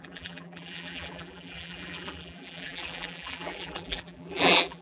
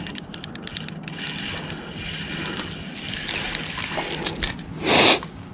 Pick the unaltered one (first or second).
second